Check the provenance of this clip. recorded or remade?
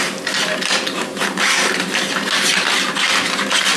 recorded